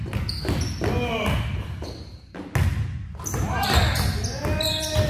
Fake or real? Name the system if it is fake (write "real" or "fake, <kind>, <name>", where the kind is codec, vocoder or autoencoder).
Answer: real